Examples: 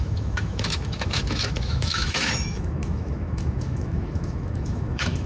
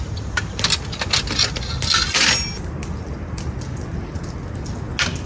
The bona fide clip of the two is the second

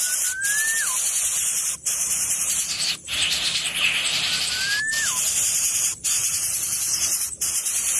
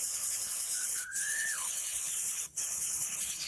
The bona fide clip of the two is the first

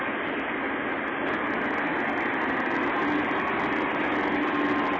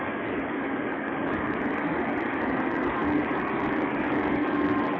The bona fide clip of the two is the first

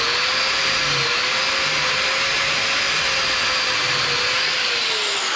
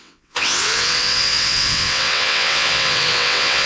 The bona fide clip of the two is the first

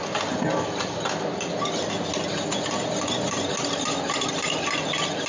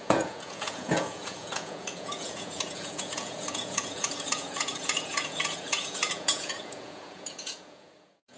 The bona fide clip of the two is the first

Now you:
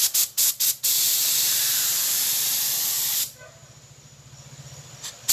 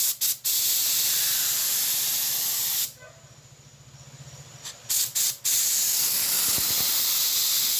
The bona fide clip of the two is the second